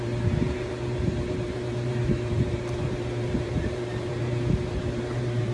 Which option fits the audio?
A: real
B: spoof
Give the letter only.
B